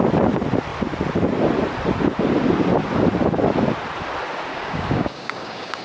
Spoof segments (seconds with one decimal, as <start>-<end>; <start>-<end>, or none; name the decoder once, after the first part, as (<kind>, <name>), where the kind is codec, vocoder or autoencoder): 4.5-5.8 (codec, DAC)